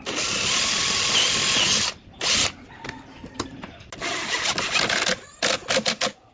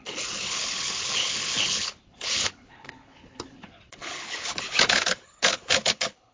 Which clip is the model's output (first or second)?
second